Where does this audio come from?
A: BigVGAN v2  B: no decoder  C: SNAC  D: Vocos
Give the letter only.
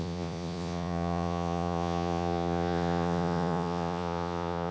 D